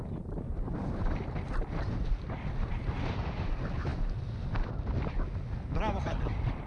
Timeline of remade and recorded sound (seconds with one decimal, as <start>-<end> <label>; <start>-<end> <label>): 0.0-0.5 recorded; 0.5-3.2 remade; 3.2-6.7 recorded